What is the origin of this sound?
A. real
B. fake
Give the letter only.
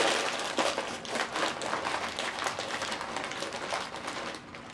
A